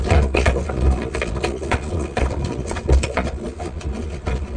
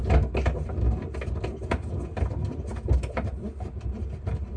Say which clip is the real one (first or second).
second